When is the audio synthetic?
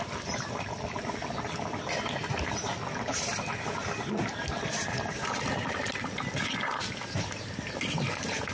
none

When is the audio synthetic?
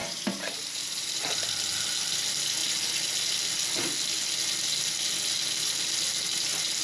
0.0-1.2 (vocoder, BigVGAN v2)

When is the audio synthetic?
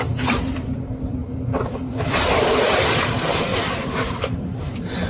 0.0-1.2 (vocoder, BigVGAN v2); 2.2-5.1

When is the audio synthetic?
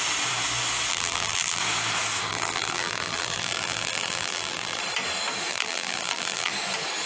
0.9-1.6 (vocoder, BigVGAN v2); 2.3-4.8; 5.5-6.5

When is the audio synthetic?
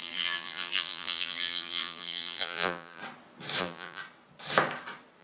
0.0-3.0 (vocoder, BigVGAN v2); 3.6-4.0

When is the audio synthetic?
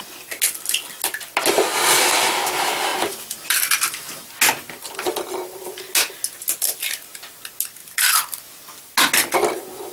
2.9-3.6 (vocoder, BigVGAN v2); 7.8-8.8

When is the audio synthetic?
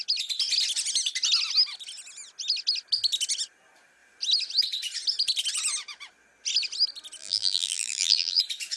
7.2-8.4 (vocoder, BigVGAN v2)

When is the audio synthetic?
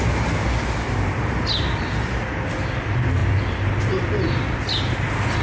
none